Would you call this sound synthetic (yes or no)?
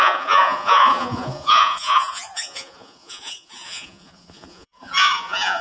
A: yes